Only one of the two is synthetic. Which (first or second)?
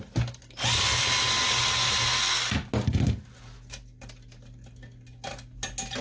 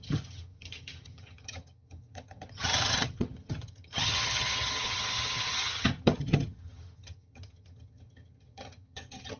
second